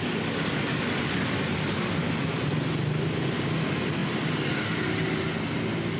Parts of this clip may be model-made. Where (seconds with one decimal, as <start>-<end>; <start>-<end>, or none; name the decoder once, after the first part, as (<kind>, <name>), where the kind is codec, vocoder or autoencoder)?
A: none